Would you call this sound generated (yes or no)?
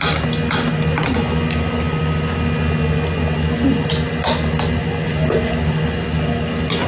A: no